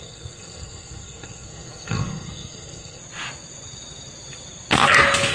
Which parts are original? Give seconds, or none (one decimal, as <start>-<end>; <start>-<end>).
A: 3.0-5.3